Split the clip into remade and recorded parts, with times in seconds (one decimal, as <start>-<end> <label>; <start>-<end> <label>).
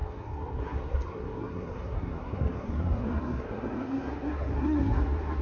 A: 0.0-5.4 remade